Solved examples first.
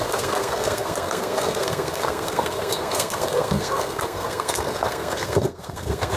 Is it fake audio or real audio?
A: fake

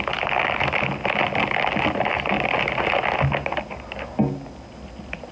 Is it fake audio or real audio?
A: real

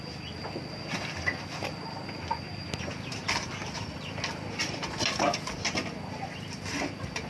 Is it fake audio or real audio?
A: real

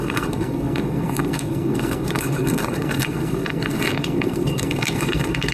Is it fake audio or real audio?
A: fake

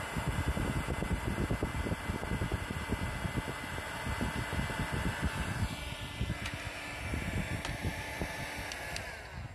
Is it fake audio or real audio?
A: real